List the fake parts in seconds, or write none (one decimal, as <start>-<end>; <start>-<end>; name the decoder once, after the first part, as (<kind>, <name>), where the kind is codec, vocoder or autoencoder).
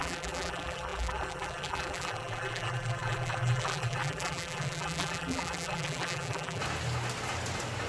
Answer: 0.0-6.6 (vocoder, BigVGAN v2)